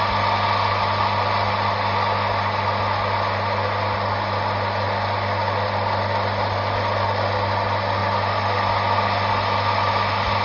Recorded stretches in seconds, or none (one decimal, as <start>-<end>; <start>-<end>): 0.0-10.4